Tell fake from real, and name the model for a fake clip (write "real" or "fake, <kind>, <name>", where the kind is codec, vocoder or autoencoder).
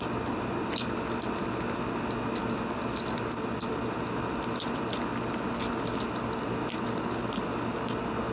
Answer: real